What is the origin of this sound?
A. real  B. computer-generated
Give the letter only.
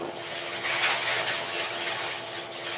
B